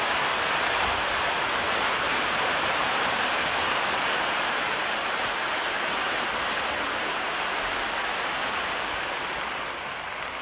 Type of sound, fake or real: real